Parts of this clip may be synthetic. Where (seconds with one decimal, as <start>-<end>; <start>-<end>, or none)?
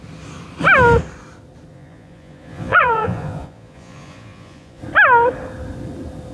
1.7-4.8